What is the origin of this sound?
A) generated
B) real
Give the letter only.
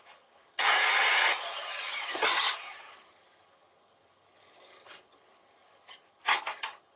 A